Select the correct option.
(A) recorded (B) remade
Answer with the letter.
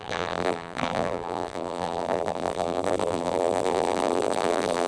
B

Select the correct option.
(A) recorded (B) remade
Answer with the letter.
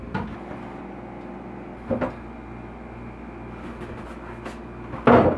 A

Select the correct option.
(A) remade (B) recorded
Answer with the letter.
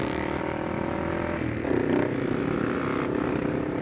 A